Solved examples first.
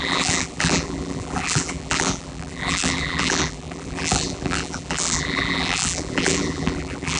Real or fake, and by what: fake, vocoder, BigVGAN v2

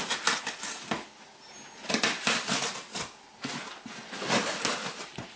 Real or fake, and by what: real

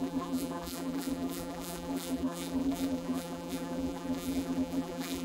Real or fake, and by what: fake, vocoder, BigVGAN v2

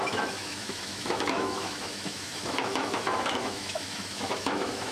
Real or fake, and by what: fake, autoencoder, DAC-VAE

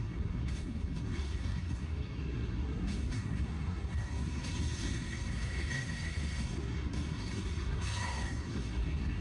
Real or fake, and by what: fake, codec, SNAC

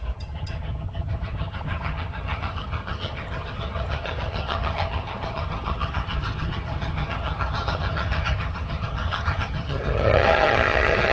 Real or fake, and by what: fake, vocoder, HiFi-GAN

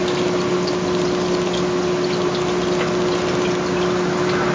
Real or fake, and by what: real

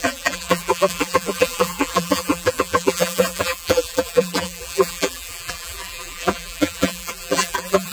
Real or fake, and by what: fake, vocoder, BigVGAN v2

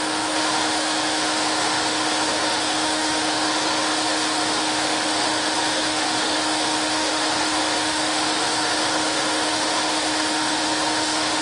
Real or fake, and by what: fake, autoencoder, DAC-VAE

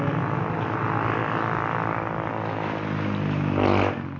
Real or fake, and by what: real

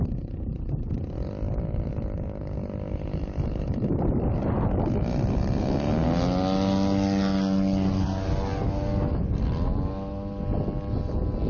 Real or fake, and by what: real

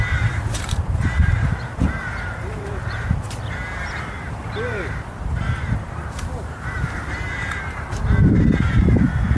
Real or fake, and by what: fake, vocoder, BigVGAN v2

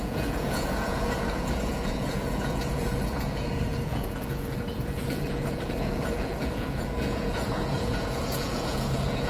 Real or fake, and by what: fake, vocoder, Vocos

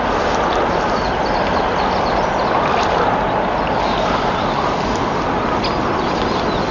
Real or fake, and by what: real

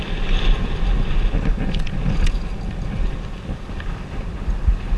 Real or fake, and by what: real